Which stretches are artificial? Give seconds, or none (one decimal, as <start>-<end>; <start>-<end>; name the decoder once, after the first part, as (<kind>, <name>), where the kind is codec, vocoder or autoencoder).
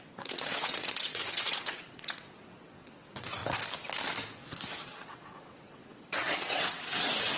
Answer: 0.0-3.4 (vocoder, WaveNeXt); 4.8-7.4